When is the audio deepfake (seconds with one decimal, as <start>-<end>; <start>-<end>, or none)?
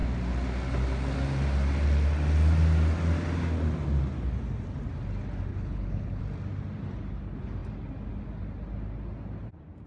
5.5-6.2